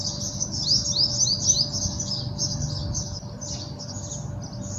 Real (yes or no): yes